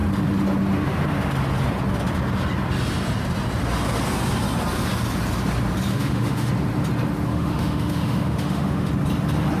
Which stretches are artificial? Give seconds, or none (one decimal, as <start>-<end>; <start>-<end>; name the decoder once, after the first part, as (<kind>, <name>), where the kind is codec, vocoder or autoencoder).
5.9-6.5 (autoencoder, DAC-VAE); 7.3-8.9